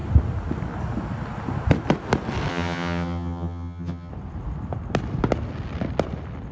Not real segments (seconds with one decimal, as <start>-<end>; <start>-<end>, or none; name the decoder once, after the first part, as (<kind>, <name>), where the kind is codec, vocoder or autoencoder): 2.5-4.1 (vocoder, HiFi-GAN)